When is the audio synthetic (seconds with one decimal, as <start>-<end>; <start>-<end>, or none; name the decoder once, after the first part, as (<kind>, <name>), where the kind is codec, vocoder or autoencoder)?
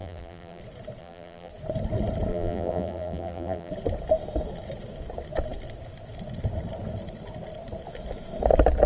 0.0-0.6 (vocoder, BigVGAN v2); 1.0-1.5; 2.3-3.7